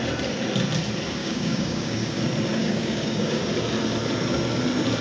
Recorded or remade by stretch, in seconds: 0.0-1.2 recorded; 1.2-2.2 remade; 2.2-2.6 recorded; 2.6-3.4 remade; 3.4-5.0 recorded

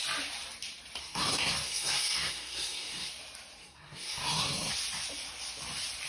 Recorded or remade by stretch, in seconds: 0.0-1.0 recorded; 1.0-3.1 remade; 3.1-3.6 recorded; 3.6-4.7 remade; 4.7-6.1 recorded

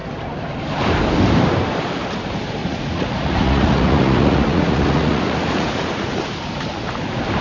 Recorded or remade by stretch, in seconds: 0.0-2.6 recorded; 2.6-6.2 remade; 6.2-7.4 recorded

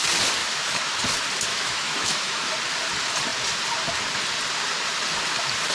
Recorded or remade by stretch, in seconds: 0.0-0.4 recorded; 0.4-1.0 remade; 1.0-1.5 recorded; 1.5-2.4 remade; 2.4-5.7 recorded

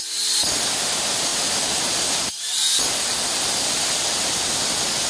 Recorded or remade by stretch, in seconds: 0.0-5.1 recorded

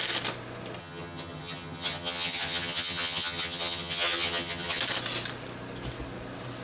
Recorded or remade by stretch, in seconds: 0.0-0.8 recorded; 0.8-4.8 remade; 4.8-6.6 recorded